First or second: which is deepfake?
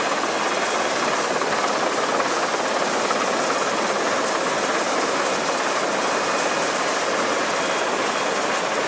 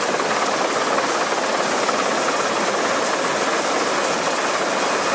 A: second